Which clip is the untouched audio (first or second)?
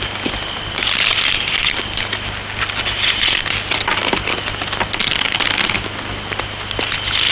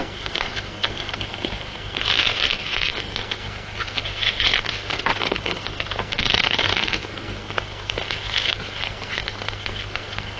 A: first